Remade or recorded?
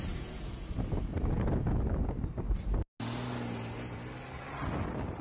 recorded